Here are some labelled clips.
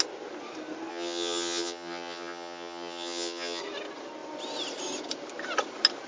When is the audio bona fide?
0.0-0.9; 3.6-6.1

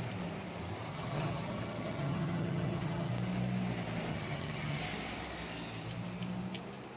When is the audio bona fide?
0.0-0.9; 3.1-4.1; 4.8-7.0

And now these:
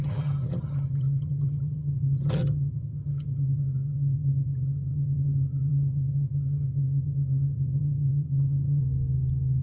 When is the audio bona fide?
8.8-9.6

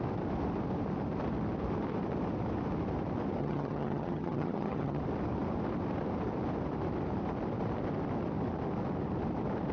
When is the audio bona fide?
0.0-3.4; 5.0-9.7

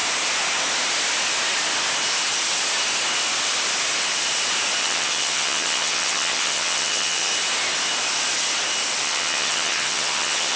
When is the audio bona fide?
0.0-4.8; 7.3-9.0